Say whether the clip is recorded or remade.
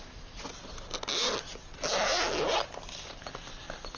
recorded